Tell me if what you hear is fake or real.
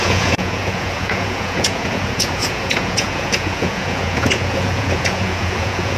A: fake